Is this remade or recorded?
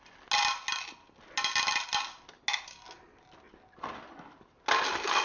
recorded